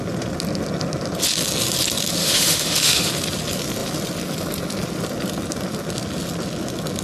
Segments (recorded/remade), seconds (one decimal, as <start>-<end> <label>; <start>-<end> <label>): 0.0-2.2 recorded; 2.2-3.1 remade; 3.1-7.0 recorded